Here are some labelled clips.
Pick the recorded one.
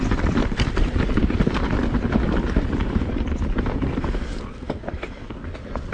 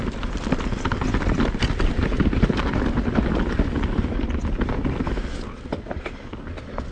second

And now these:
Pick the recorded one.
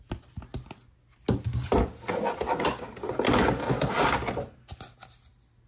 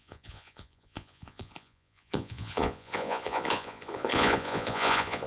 first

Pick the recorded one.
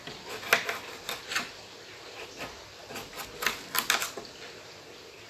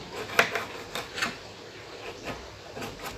second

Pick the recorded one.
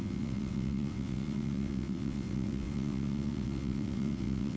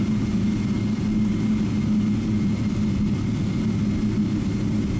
second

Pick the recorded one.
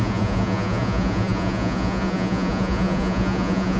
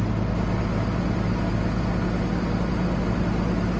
second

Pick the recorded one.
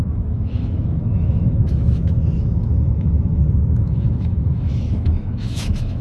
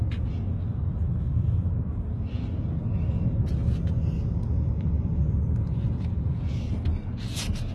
second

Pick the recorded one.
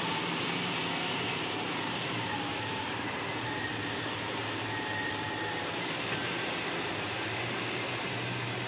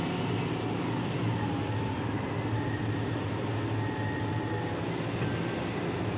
second